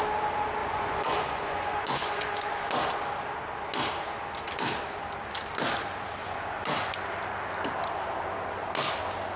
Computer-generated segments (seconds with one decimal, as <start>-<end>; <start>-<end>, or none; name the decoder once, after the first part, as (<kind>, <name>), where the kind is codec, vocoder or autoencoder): 0.6-2.5 (vocoder, Vocos); 6.2-7.0